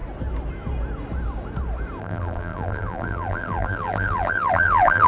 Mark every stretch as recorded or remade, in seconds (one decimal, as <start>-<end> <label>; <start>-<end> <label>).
0.0-2.0 recorded; 2.0-5.1 remade